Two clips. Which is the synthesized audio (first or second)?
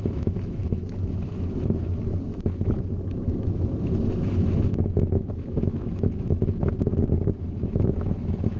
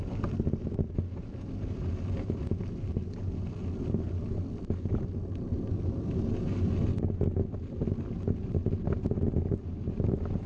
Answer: first